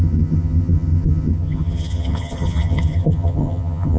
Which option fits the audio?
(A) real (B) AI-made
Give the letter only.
B